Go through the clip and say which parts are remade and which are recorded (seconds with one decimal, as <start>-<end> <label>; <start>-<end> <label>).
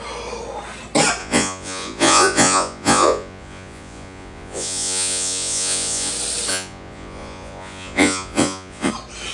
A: 0.0-1.2 recorded; 1.2-6.1 remade; 6.1-6.5 recorded; 6.5-8.9 remade; 8.9-9.3 recorded